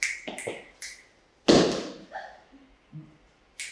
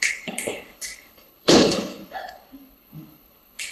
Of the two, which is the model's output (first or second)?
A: second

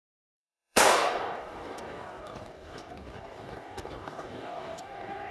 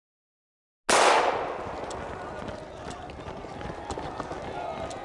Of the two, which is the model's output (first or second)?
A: first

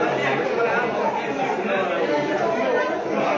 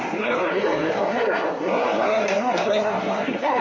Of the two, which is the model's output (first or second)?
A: second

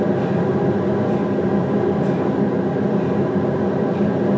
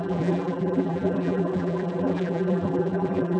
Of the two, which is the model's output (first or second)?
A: second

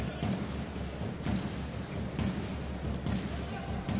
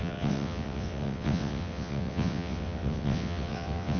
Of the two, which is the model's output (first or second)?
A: second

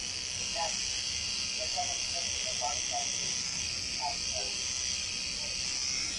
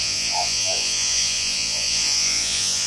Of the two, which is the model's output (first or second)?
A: second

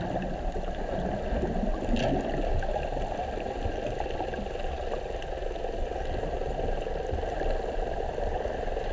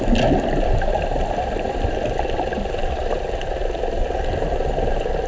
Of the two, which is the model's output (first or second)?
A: second